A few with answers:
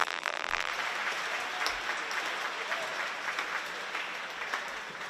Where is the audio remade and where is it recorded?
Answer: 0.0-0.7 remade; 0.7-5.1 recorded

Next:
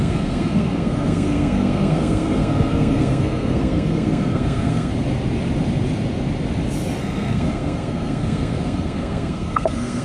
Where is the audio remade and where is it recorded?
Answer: 0.0-4.9 remade; 4.9-7.0 recorded; 7.0-10.0 remade

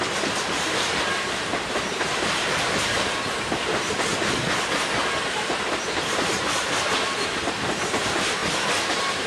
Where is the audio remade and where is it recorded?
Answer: 0.0-4.1 remade; 4.1-5.3 recorded; 5.3-8.4 remade; 8.4-8.9 recorded; 8.9-9.3 remade

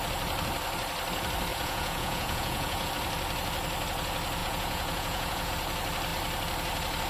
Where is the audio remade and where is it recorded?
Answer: 0.0-1.5 recorded; 1.5-2.9 remade; 2.9-4.4 recorded; 4.4-5.5 remade; 5.5-7.1 recorded

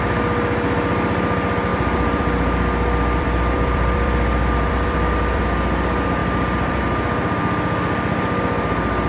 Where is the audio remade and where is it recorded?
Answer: 0.0-1.7 recorded; 1.7-5.4 remade; 5.4-6.2 recorded; 6.2-6.8 remade; 6.8-9.1 recorded

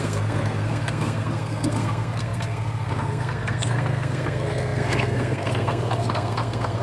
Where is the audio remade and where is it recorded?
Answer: 0.0-6.8 remade

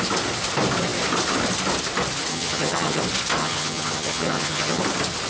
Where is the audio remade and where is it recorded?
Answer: 0.0-2.3 recorded; 2.3-3.0 remade; 3.0-3.4 recorded; 3.4-4.8 remade; 4.8-5.3 recorded